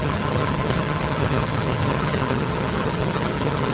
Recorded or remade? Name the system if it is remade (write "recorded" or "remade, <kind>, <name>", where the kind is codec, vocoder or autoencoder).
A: remade, vocoder, HiFi-GAN